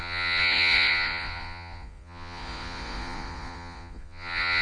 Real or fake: fake